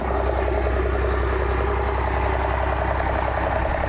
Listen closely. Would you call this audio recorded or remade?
recorded